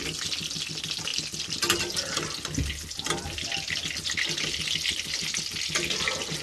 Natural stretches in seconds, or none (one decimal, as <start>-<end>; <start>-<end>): 0.0-6.4